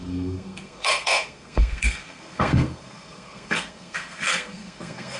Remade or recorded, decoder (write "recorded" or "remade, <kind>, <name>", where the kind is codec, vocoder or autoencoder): remade, codec, SNAC